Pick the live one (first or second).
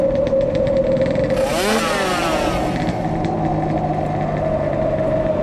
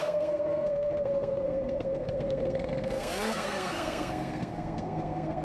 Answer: first